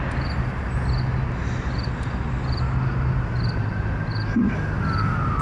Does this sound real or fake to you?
real